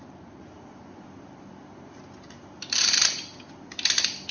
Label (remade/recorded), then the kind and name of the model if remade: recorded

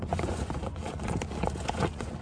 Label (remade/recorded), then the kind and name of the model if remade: remade, vocoder, Vocos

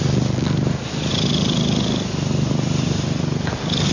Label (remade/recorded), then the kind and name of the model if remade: recorded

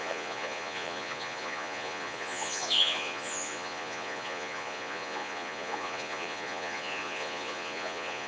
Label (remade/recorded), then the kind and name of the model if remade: remade, vocoder, Vocos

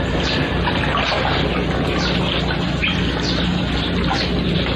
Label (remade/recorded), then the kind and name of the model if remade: recorded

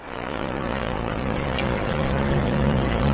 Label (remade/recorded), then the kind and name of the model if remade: remade, vocoder, Vocos